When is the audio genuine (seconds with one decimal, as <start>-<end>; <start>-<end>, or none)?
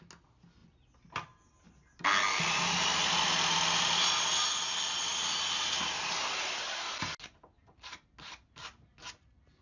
0.0-9.6